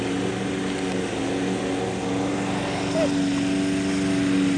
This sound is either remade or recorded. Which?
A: recorded